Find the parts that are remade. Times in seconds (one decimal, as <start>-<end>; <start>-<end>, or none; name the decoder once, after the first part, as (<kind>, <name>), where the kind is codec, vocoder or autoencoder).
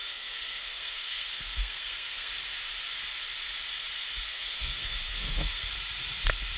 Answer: 0.0-2.3 (codec, SNAC); 4.3-5.7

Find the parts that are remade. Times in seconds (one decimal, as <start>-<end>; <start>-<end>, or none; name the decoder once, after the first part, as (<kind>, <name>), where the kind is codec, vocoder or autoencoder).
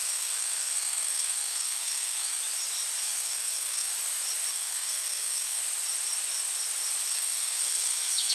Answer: 0.0-2.4 (codec, SNAC); 3.0-3.9; 4.5-5.6; 7.1-8.3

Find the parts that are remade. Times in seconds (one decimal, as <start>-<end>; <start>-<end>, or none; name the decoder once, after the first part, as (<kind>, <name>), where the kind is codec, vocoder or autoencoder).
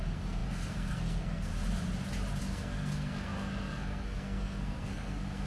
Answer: 0.0-1.5 (codec, SNAC); 2.4-5.5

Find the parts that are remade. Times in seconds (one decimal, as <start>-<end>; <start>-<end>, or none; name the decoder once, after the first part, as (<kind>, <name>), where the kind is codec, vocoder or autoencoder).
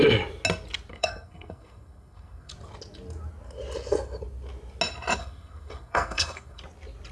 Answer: 0.9-2.5 (codec, SNAC); 5.2-6.6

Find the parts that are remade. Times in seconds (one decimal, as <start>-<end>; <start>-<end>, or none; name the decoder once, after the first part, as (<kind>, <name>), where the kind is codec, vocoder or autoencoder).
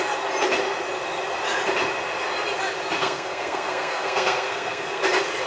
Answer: 3.0-5.0 (codec, SNAC)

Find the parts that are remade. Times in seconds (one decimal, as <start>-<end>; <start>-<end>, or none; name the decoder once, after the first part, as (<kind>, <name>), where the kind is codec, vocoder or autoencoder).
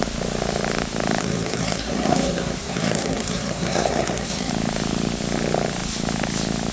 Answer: 1.2-4.5 (codec, SNAC)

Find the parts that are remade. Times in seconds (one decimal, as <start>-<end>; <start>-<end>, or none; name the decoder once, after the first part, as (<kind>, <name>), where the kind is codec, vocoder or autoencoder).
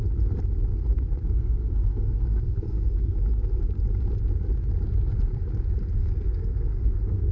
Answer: 0.7-3.6 (codec, SNAC); 6.0-7.3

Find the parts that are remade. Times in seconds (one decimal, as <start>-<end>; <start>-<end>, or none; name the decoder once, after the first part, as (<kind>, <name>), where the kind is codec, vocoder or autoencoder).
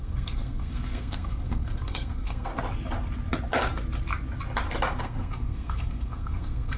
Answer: 0.0-2.5 (codec, SNAC); 5.0-6.8